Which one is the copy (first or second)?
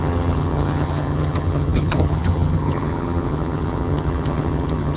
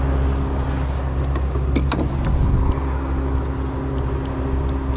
first